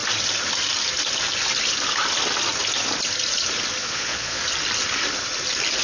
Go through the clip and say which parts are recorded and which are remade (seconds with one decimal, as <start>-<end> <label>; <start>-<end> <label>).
0.0-3.8 recorded; 3.8-4.4 remade; 4.4-5.8 recorded